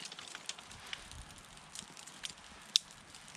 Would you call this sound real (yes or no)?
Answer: yes